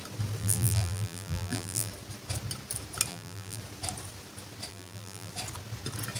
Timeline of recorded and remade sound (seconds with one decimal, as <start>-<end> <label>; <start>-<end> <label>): 0.0-0.4 recorded; 0.4-1.9 remade; 1.9-3.1 recorded; 3.1-3.6 remade; 3.6-4.7 recorded; 4.7-5.3 remade; 5.3-6.2 recorded